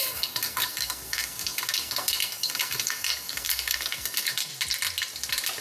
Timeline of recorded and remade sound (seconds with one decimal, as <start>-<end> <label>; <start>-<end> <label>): 0.0-4.5 remade; 4.5-5.6 recorded